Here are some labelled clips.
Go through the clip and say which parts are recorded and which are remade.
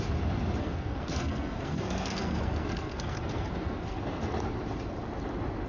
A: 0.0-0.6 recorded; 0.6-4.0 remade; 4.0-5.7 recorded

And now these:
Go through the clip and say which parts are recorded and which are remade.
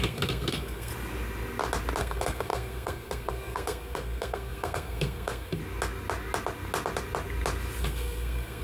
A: 0.0-0.9 remade; 0.9-2.0 recorded; 2.0-5.6 remade; 5.6-7.8 recorded; 7.8-8.6 remade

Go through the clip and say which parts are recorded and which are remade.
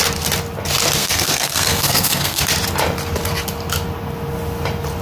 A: 0.0-1.0 recorded; 1.0-2.4 remade; 2.4-5.0 recorded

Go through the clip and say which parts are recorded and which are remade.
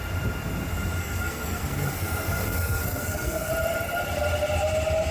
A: 0.0-1.0 recorded; 1.0-3.5 remade; 3.5-5.1 recorded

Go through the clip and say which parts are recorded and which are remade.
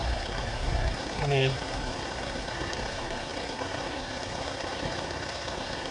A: 0.0-5.9 remade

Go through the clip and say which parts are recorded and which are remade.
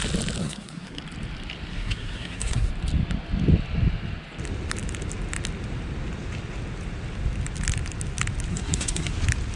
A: 0.0-0.4 recorded; 0.4-1.0 remade; 1.0-1.7 recorded; 1.7-2.7 remade; 2.7-8.5 recorded; 8.5-9.1 remade; 9.1-9.6 recorded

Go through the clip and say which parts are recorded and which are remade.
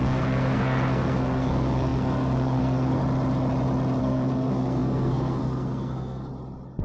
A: 0.0-3.0 remade; 3.0-4.0 recorded; 4.0-6.3 remade; 6.3-6.8 recorded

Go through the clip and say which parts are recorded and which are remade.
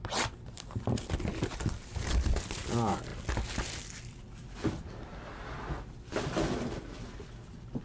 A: 0.0-7.8 recorded